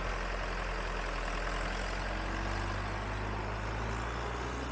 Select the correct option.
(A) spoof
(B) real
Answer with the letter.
B